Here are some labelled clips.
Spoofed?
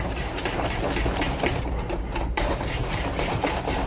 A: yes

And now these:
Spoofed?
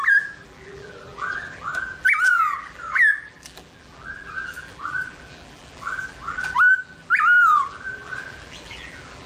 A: yes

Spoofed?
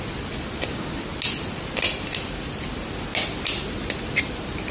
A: no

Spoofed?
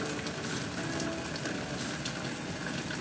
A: no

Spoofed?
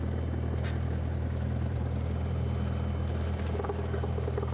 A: yes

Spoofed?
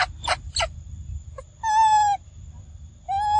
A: no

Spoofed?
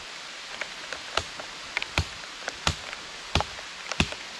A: no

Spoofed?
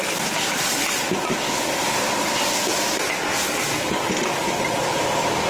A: no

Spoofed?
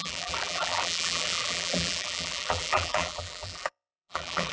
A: yes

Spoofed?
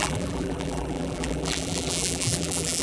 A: yes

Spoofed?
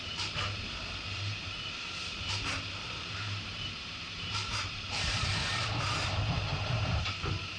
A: yes